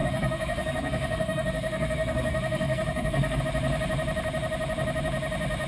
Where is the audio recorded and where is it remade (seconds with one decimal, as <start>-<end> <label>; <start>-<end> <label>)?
0.0-3.4 remade; 3.4-5.7 recorded